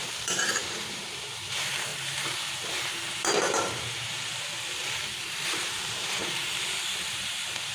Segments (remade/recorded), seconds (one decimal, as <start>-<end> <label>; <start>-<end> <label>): 0.0-7.7 remade